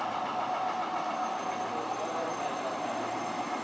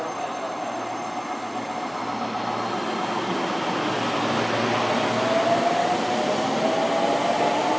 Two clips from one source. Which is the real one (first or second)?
second